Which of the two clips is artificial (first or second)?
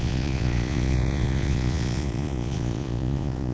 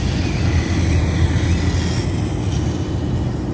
first